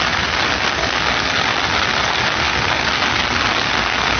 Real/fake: real